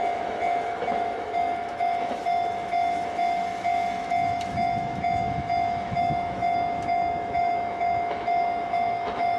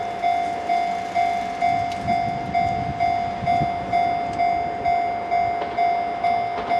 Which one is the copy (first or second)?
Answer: first